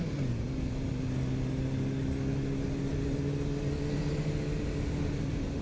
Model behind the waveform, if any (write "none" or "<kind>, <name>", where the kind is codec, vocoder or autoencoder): none